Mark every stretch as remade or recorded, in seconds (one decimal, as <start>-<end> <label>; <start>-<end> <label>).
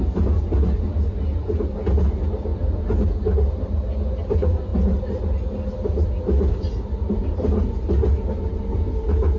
0.0-9.4 recorded